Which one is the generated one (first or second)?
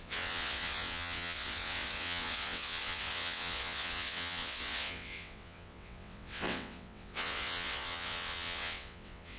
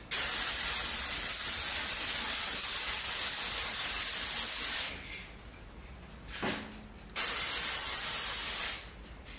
first